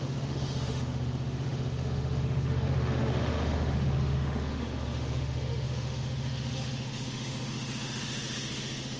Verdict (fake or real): fake